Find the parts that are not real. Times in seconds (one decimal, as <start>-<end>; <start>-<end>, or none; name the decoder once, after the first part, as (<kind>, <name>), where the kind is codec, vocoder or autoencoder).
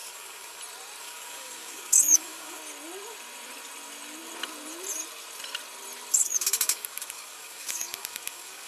0.0-0.6 (codec, DAC); 1.0-2.6; 6.2-8.7